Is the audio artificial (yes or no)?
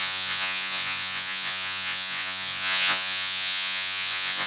yes